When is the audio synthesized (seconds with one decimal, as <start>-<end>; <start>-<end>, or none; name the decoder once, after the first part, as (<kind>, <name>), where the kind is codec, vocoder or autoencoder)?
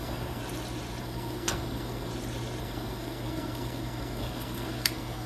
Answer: 0.0-0.4 (codec, SNAC); 1.0-2.1; 2.6-5.3